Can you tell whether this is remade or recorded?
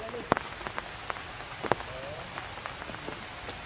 recorded